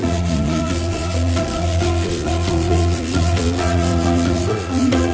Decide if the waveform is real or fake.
fake